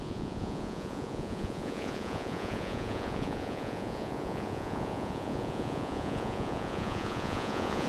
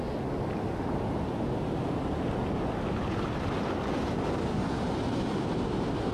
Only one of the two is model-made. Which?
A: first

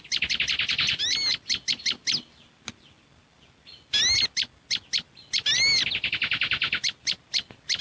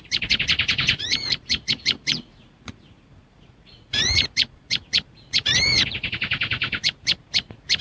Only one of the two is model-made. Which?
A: second